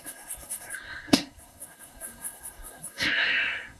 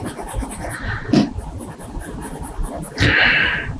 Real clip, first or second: second